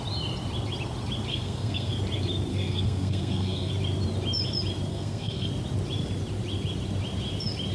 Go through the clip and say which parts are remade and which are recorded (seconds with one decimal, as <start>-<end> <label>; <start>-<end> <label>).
0.0-1.3 recorded; 1.3-2.0 remade; 2.0-2.5 recorded; 2.5-3.7 remade; 3.7-4.9 recorded; 4.9-5.5 remade; 5.5-7.7 recorded